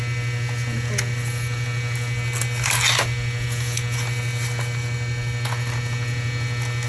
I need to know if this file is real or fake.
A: real